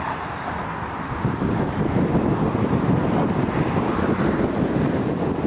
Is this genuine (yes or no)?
yes